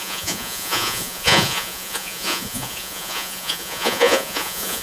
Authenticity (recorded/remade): remade